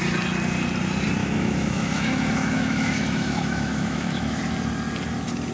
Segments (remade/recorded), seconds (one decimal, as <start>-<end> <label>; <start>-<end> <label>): 0.0-1.2 recorded; 1.2-4.4 remade; 4.4-5.5 recorded